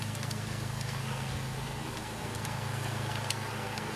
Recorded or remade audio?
remade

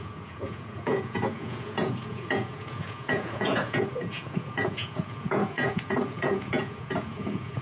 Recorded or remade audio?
remade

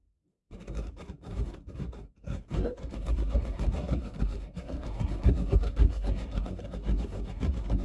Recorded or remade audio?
remade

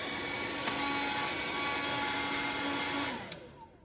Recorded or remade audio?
recorded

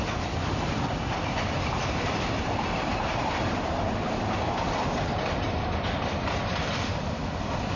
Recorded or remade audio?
remade